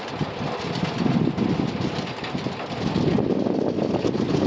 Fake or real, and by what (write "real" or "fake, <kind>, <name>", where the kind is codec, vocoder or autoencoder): real